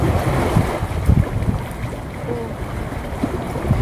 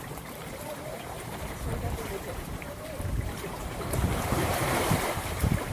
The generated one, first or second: second